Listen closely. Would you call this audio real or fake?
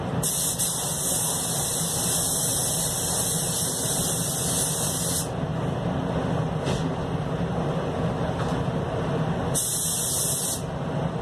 real